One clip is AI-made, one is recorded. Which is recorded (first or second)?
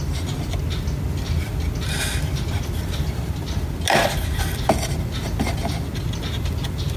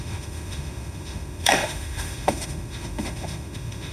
first